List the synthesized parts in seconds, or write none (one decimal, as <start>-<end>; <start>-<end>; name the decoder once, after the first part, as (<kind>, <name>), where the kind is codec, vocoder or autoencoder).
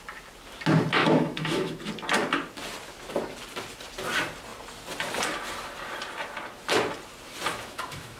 1.0-1.8 (autoencoder, DAC-VAE); 7.5-8.2